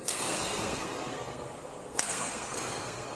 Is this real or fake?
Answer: fake